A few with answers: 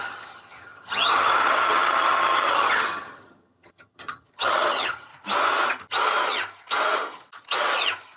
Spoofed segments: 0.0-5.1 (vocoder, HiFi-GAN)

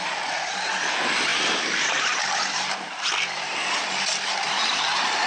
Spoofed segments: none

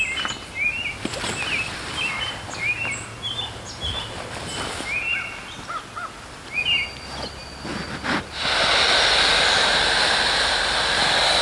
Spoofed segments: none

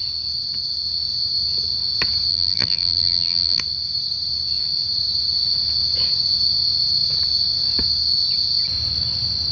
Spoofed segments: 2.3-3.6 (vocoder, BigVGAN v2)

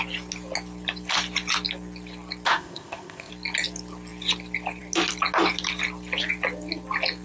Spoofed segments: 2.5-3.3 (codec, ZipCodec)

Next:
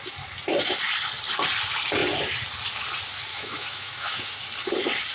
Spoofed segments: 3.3-4.4 (autoencoder, DAC-VAE)